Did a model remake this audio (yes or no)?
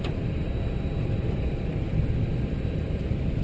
no